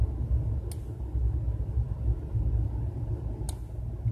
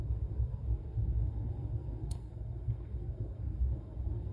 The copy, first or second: second